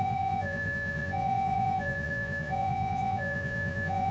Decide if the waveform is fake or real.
fake